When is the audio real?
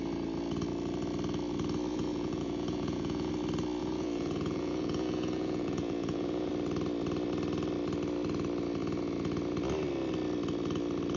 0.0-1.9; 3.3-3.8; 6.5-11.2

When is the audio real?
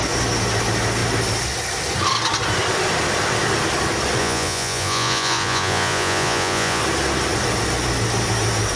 0.0-4.2; 6.8-8.8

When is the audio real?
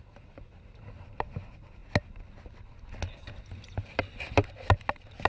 0.0-5.3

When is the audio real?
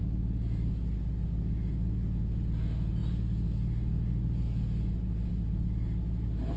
0.0-6.6